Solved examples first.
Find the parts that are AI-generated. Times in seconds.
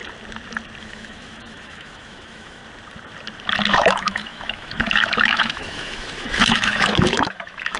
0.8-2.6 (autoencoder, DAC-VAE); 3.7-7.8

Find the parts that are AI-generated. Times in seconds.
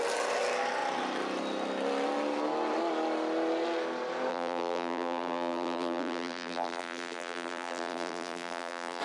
4.3-9.0 (vocoder, BigVGAN v2)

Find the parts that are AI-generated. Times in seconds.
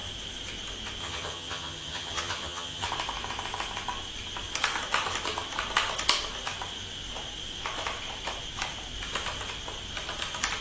1.0-2.9 (vocoder, HiFi-GAN)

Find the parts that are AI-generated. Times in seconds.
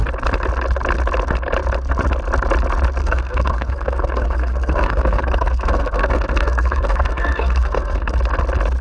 3.0-8.2 (codec, SNAC)